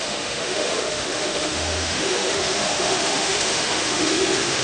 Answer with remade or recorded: remade